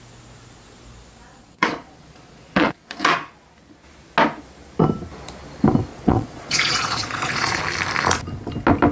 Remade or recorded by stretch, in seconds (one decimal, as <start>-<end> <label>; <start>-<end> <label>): 0.0-1.3 recorded; 1.3-3.3 remade; 3.3-5.9 recorded; 5.9-7.6 remade; 7.6-8.9 recorded